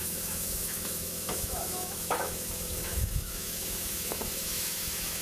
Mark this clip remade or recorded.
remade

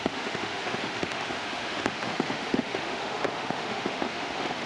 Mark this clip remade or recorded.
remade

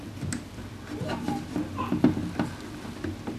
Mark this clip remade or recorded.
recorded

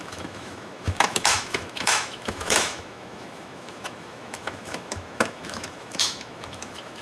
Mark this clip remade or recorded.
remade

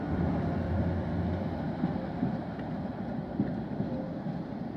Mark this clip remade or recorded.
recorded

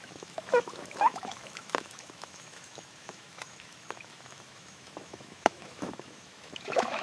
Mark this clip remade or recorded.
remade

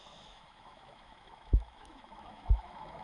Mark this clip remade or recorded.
remade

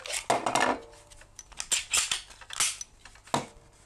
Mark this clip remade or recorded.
recorded